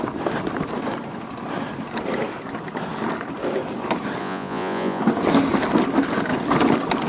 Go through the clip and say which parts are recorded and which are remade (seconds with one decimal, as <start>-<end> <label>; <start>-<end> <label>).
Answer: 0.0-4.2 recorded; 4.2-5.0 remade; 5.0-7.1 recorded